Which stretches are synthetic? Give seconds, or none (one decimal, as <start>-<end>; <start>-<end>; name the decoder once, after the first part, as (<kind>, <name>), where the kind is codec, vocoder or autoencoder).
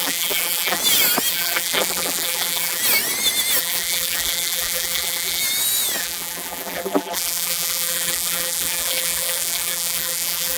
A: 0.0-0.8 (vocoder, BigVGAN v2); 1.3-2.8; 3.6-5.4; 6.0-10.6